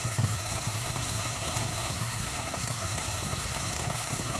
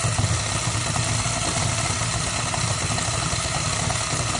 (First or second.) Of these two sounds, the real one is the second